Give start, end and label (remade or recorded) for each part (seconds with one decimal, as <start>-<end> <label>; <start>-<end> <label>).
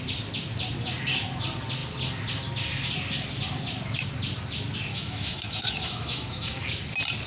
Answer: 0.0-4.9 recorded; 4.9-6.6 remade; 6.6-7.3 recorded